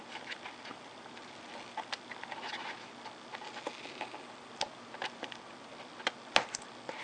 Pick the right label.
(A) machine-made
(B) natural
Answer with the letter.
B